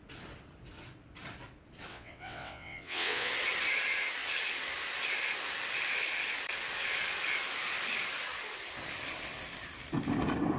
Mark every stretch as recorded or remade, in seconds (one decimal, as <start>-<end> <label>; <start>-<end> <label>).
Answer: 0.0-1.9 recorded; 1.9-3.3 remade; 3.3-10.6 recorded